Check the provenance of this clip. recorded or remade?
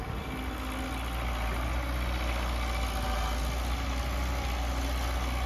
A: recorded